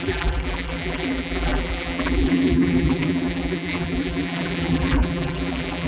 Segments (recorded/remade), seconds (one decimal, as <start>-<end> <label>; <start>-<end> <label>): 0.0-5.9 remade